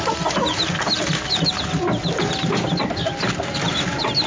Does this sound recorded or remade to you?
recorded